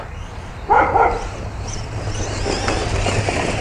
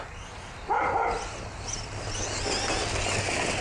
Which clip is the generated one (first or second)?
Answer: first